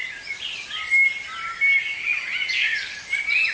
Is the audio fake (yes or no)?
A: no